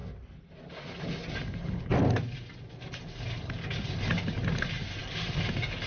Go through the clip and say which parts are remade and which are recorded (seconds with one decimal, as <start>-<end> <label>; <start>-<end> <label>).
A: 0.0-5.9 recorded